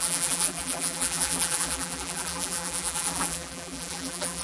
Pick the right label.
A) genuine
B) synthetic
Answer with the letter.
B